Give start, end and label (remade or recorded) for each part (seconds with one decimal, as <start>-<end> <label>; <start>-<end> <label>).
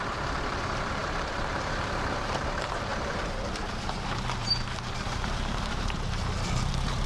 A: 0.0-7.1 remade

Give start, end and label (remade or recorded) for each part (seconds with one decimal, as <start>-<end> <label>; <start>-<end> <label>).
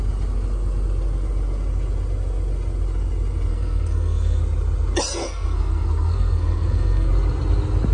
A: 0.0-3.5 recorded; 3.5-4.4 remade; 4.4-5.2 recorded; 5.2-7.1 remade; 7.1-7.9 recorded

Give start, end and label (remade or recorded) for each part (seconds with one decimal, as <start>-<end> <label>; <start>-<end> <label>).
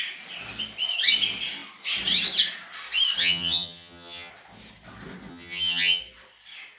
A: 0.0-3.2 recorded; 3.2-4.3 remade; 4.3-5.3 recorded; 5.3-6.0 remade; 6.0-6.8 recorded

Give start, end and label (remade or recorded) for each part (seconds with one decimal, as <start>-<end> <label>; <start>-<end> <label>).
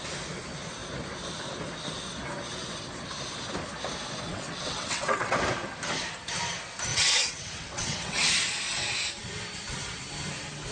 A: 0.0-4.3 recorded; 4.3-5.4 remade; 5.4-6.9 recorded; 6.9-8.3 remade; 8.3-10.7 recorded